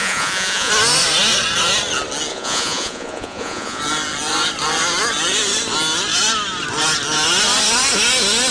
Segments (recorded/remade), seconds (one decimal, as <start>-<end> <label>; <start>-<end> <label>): 0.0-0.7 remade; 0.7-2.3 recorded; 2.3-3.8 remade; 3.8-8.5 recorded